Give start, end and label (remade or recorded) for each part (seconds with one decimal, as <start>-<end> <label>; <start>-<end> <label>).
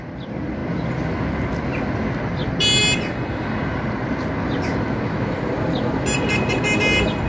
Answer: 0.0-7.3 recorded